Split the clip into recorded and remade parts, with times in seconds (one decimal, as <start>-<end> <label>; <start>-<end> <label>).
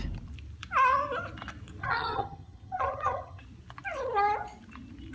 0.0-1.8 recorded; 1.8-3.4 remade; 3.4-5.1 recorded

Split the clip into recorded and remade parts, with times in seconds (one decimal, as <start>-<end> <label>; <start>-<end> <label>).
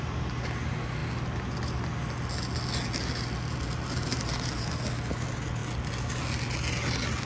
0.0-7.3 recorded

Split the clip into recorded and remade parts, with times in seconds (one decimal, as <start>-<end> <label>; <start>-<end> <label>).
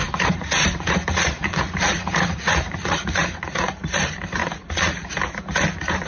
0.0-3.7 remade; 3.7-4.4 recorded; 4.4-5.1 remade; 5.1-6.1 recorded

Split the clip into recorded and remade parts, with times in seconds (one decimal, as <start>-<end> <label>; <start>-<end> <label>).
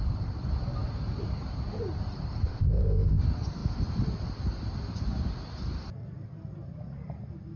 0.0-2.5 recorded; 2.5-3.2 remade; 3.2-7.6 recorded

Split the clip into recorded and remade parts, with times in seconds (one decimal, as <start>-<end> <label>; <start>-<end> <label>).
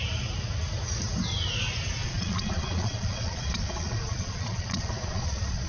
0.0-2.0 recorded; 2.0-5.7 remade